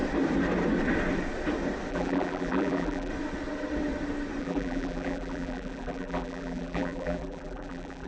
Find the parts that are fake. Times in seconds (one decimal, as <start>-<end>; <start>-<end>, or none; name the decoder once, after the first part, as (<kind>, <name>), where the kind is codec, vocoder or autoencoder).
1.9-3.1 (vocoder, BigVGAN v2); 4.4-8.1